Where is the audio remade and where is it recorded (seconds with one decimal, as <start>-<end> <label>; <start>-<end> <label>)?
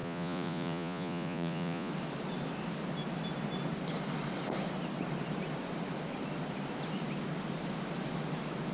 0.0-1.9 remade; 1.9-8.7 recorded